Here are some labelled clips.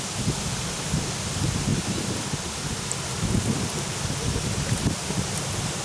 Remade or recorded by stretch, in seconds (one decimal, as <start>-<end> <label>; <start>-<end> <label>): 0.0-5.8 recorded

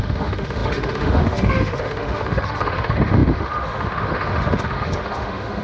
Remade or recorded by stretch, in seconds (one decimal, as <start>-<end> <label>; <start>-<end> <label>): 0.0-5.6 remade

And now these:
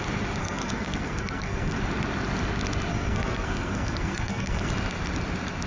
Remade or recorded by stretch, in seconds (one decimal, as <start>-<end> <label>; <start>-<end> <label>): 0.0-0.4 recorded; 0.4-1.8 remade; 1.8-2.9 recorded; 2.9-4.7 remade; 4.7-5.7 recorded

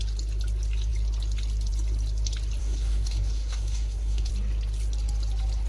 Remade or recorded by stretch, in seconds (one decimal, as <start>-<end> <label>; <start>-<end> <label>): 0.0-2.6 recorded; 2.6-4.3 remade; 4.3-5.7 recorded